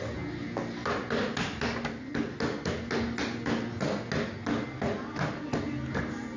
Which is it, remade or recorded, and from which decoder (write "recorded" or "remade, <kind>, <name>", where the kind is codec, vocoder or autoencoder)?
recorded